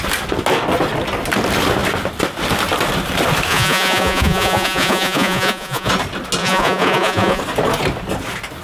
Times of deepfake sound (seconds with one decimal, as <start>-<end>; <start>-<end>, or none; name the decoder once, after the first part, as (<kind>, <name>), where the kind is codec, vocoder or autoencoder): 3.5-5.9 (vocoder, Vocos); 6.4-7.4